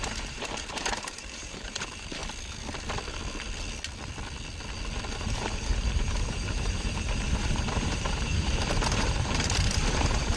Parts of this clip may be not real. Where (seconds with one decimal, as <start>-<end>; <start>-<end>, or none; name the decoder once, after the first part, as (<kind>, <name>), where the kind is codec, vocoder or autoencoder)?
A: 0.0-2.2 (vocoder, BigVGAN v2); 5.1-10.4